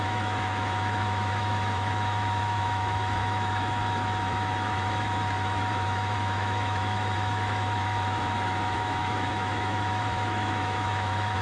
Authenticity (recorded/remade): remade